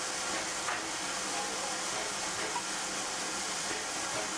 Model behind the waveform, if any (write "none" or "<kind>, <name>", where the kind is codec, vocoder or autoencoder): none